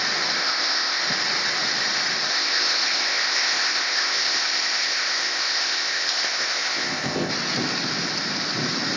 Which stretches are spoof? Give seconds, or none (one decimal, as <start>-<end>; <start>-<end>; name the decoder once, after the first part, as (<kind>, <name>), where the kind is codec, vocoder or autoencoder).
0.4-1.0 (codec, ZipCodec); 2.3-7.3